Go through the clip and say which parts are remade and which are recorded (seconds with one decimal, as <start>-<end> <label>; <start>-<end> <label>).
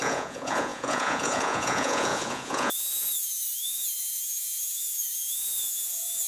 0.0-6.3 remade